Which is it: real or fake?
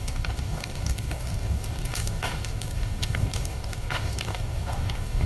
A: fake